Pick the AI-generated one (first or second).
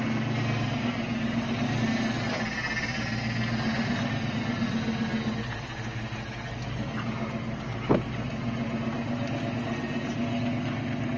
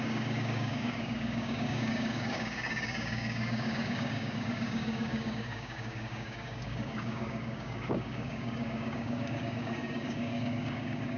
second